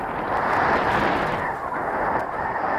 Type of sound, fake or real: real